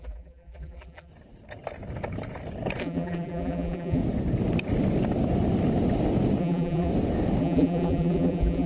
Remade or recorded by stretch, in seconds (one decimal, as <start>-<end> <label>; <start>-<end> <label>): 0.0-1.1 remade; 1.1-2.8 recorded; 2.8-4.0 remade; 4.0-6.4 recorded; 6.4-6.9 remade; 6.9-7.4 recorded; 7.4-8.7 remade